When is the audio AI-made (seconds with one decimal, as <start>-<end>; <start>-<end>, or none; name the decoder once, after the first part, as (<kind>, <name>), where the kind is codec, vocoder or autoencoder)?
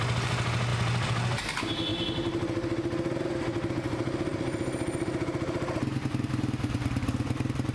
none